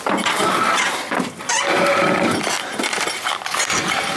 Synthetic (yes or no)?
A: no